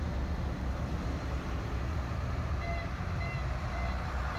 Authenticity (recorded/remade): recorded